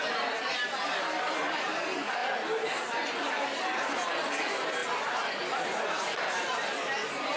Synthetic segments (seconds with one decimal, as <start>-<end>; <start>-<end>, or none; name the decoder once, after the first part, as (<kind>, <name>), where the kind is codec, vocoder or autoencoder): none